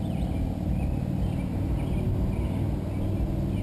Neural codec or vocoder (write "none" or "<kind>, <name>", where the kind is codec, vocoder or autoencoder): none